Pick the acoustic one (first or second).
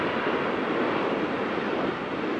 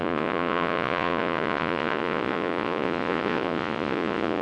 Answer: first